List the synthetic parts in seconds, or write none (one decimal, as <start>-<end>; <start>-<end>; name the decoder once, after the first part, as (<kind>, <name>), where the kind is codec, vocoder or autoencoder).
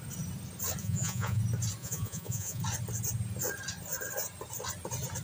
0.8-1.4 (vocoder, Vocos); 1.8-2.6